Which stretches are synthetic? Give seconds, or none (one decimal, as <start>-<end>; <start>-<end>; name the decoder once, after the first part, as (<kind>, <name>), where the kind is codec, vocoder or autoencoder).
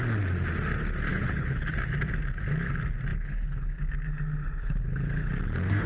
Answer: 1.1-1.7 (codec, HILCodec); 3.1-3.9; 4.4-5.3